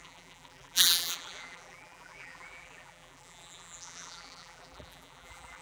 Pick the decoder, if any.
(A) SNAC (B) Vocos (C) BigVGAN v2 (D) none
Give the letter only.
C